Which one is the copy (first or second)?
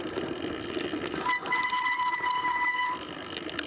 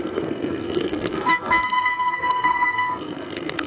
second